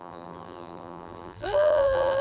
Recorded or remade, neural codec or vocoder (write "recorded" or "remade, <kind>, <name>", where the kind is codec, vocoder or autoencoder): remade, vocoder, BigVGAN v2